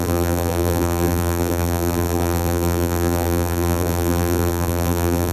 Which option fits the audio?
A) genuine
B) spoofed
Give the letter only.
B